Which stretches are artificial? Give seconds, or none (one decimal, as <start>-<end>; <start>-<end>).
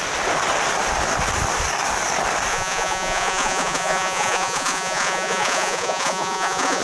2.5-6.8